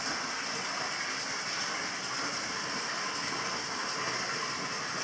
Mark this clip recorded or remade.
recorded